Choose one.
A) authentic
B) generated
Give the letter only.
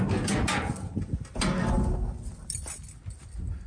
A